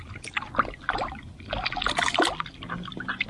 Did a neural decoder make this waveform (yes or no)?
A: no